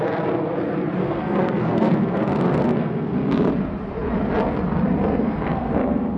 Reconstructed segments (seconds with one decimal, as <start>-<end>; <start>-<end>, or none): 1.0-3.5; 5.2-6.2